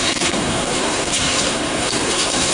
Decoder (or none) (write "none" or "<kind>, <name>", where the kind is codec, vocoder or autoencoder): codec, SNAC